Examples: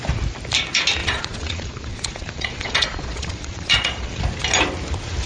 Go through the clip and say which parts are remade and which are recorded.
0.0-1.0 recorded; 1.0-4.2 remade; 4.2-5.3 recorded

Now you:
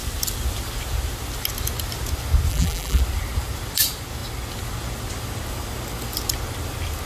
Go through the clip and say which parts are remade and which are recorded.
0.0-2.5 recorded; 2.5-3.0 remade; 3.0-7.1 recorded

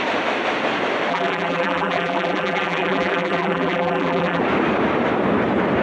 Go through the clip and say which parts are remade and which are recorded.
0.0-1.1 recorded; 1.1-4.4 remade; 4.4-5.8 recorded

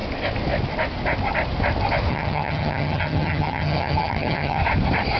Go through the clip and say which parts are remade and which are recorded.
0.0-2.1 recorded; 2.1-4.6 remade; 4.6-5.2 recorded

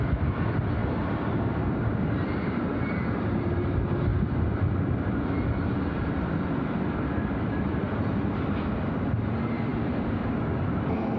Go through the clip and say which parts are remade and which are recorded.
0.0-0.8 recorded; 0.8-3.4 remade; 3.4-9.7 recorded; 9.7-10.4 remade; 10.4-11.2 recorded

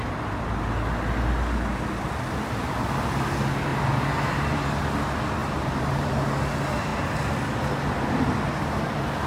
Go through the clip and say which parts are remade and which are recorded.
0.0-3.7 recorded; 3.7-4.8 remade; 4.8-5.4 recorded; 5.4-6.1 remade; 6.1-9.3 recorded